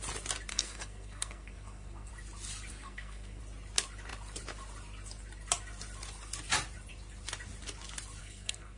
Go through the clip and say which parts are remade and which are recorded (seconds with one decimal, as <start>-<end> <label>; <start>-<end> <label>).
0.0-0.5 recorded; 0.5-2.1 remade; 2.1-2.7 recorded; 2.7-3.4 remade; 3.4-8.2 recorded; 8.2-8.8 remade